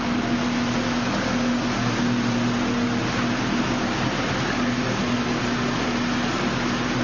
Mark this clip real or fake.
real